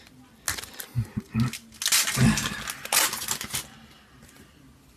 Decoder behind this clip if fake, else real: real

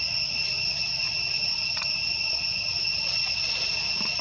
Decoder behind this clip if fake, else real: real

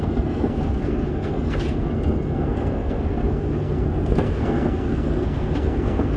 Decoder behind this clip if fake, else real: fake, codec, SNAC